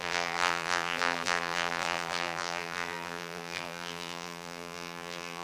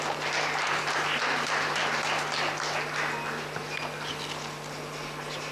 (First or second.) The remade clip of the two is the first